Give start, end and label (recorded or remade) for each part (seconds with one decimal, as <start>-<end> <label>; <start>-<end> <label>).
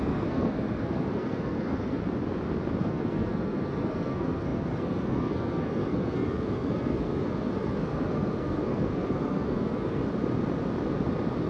0.0-2.0 remade; 2.0-2.8 recorded; 2.8-10.1 remade; 10.1-11.5 recorded